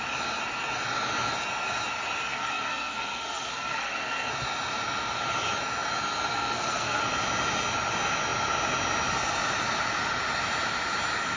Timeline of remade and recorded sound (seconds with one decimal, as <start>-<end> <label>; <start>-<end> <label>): 0.0-2.3 recorded; 2.3-4.3 remade; 4.3-6.3 recorded; 6.3-7.0 remade; 7.0-11.4 recorded

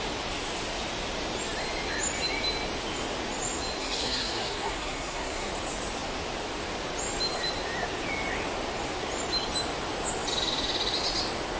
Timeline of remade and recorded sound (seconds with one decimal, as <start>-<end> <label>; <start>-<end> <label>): 0.0-3.8 recorded; 3.8-5.5 remade; 5.5-11.6 recorded

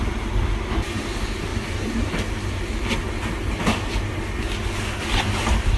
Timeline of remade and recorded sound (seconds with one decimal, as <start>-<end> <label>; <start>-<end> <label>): 0.0-5.8 recorded

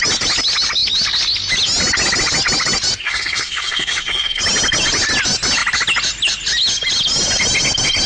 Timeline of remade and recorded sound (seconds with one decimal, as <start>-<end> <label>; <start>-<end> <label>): 0.0-3.0 recorded; 3.0-4.4 remade; 4.4-8.1 recorded

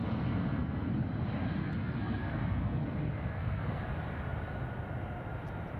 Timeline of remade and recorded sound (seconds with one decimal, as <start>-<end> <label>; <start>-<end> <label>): 0.0-0.9 remade; 0.9-1.6 recorded; 1.6-3.8 remade; 3.8-5.8 recorded